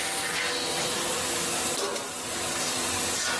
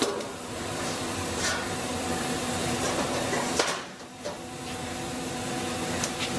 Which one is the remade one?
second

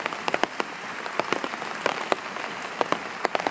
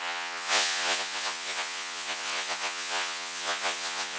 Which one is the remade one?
second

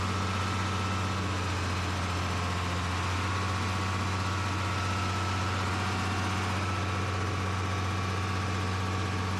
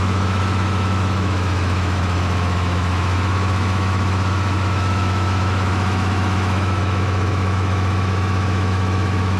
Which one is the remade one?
second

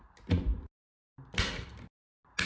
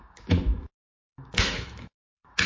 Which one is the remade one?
second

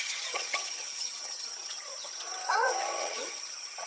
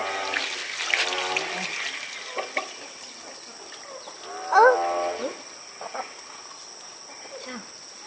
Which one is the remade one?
first